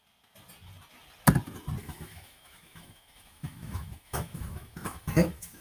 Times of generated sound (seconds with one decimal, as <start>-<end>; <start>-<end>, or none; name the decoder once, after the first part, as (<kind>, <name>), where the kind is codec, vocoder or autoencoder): 1.8-5.6 (autoencoder, DAC-VAE)